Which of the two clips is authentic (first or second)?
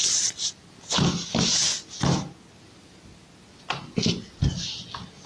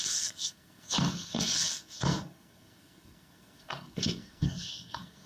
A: first